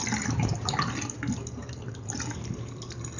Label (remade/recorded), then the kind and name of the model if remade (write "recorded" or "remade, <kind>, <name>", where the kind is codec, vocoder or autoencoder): recorded